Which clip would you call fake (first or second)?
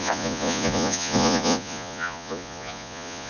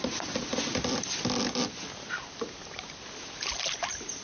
first